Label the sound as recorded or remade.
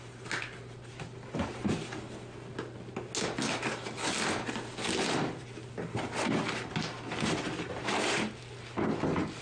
recorded